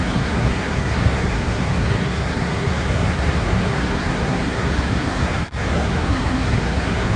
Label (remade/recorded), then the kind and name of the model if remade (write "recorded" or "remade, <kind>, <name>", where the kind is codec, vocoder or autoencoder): remade, codec, SNAC